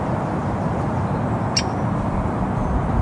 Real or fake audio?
real